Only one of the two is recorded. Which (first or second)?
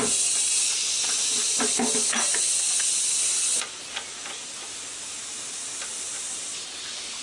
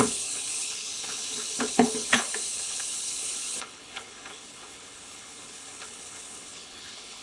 first